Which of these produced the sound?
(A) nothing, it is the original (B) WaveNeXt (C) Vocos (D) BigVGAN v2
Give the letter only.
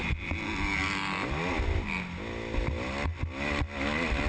A